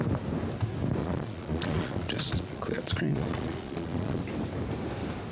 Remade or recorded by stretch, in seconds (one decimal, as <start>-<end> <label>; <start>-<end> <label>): 0.0-1.0 recorded; 1.0-4.2 remade; 4.2-5.3 recorded